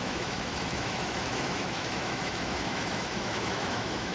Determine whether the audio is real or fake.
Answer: fake